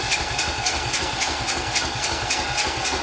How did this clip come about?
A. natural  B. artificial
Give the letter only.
B